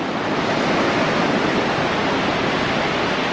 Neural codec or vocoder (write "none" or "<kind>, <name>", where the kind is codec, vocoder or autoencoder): none